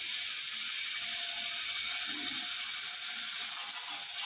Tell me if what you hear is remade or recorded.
recorded